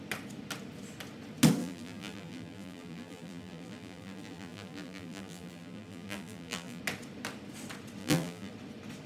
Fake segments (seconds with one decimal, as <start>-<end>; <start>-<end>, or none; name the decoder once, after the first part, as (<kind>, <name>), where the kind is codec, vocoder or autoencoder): 1.6-6.8 (vocoder, BigVGAN v2); 8.0-8.5